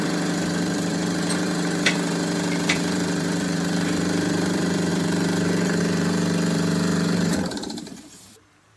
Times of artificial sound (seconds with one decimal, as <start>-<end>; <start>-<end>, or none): 0.0-8.8